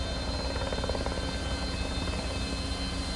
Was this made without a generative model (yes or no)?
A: yes